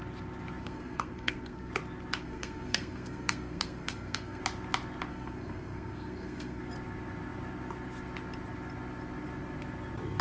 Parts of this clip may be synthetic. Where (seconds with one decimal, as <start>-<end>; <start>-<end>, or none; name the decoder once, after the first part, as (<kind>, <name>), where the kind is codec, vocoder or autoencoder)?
0.6-1.7 (codec, SNAC); 2.2-4.4; 5.1-6.6